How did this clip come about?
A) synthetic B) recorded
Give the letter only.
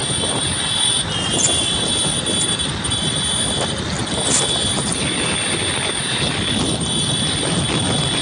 B